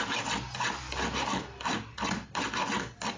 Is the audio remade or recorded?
recorded